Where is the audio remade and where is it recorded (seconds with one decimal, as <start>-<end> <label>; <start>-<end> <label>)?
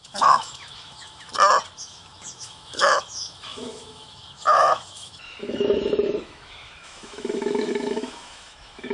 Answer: 0.0-1.3 remade; 1.3-1.8 recorded; 1.8-8.9 remade